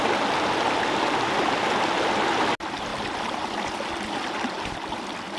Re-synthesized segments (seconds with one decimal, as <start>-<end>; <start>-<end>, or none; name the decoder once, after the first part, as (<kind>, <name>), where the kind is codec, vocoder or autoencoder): none